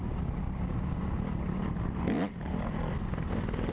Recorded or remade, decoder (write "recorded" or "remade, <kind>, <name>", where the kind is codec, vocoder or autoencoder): recorded